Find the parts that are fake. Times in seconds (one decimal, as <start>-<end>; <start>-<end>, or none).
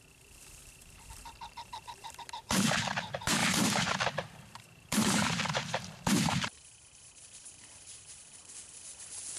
0.6-2.7; 3.4-8.5